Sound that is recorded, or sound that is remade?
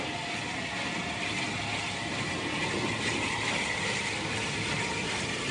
recorded